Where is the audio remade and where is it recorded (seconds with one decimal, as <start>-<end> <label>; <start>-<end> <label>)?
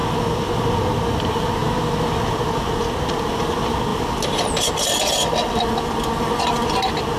0.0-3.9 recorded; 3.9-4.7 remade; 4.7-7.2 recorded